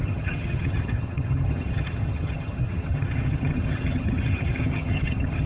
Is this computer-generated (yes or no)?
yes